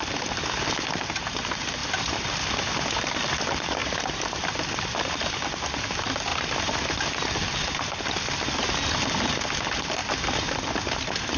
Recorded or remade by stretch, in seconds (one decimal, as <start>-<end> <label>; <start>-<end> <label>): 0.0-1.8 recorded; 1.8-3.2 remade; 3.2-3.8 recorded; 3.8-4.9 remade; 4.9-6.3 recorded; 6.3-6.9 remade; 6.9-11.4 recorded